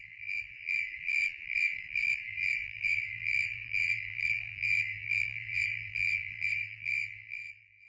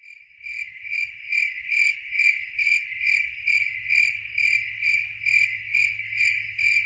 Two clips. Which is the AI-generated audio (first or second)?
first